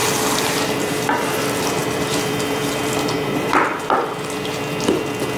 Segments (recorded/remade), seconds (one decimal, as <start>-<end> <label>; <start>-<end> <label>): 0.0-1.4 remade; 1.4-1.8 recorded; 1.8-5.0 remade; 5.0-5.4 recorded